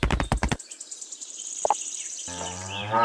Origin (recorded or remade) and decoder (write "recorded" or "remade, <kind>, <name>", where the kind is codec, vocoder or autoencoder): remade, vocoder, BigVGAN v2